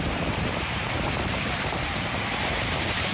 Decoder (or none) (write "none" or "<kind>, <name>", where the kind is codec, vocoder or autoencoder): vocoder, BigVGAN v2